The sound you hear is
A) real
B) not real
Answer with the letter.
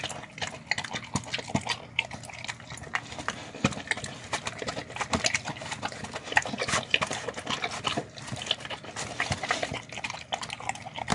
A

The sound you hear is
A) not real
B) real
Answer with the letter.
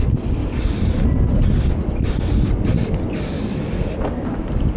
B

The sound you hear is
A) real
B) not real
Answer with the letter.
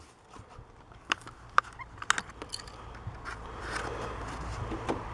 A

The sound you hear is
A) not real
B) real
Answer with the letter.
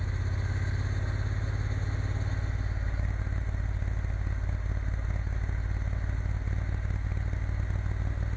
B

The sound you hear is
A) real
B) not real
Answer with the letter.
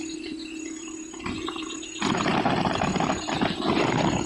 A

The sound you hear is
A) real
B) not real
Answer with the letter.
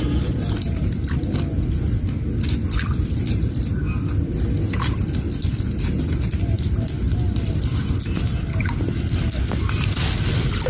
A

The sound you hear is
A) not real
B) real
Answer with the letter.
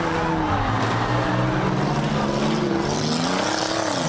B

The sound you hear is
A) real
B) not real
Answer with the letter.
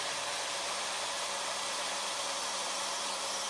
B